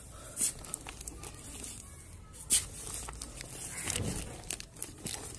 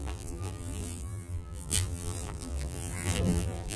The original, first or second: first